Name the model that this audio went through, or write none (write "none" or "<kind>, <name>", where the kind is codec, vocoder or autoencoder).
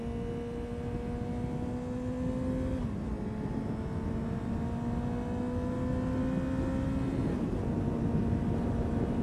none